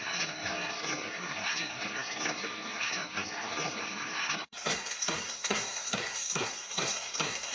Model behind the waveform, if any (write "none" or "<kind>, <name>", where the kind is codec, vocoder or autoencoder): codec, SNAC